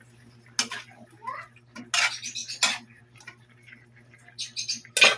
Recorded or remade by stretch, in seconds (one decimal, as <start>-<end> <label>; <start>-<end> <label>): 0.0-5.2 recorded